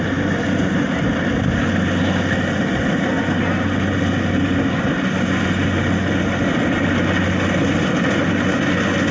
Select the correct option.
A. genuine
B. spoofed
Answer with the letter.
A